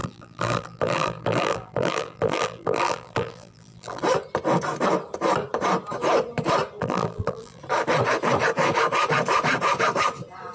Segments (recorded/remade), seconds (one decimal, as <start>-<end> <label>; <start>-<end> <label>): 0.0-4.0 remade; 4.0-6.8 recorded; 6.8-7.6 remade; 7.6-10.5 recorded